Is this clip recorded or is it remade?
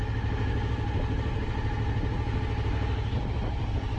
recorded